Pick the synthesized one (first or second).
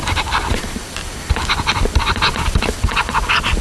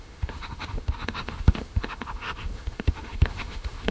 second